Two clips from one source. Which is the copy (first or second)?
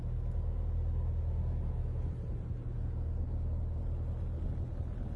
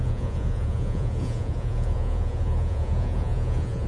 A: second